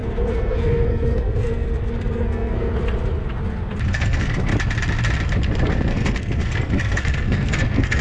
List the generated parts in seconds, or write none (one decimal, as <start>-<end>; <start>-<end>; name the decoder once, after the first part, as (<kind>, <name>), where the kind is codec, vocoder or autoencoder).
0.0-2.7 (codec, SNAC); 3.9-4.5; 5.9-8.0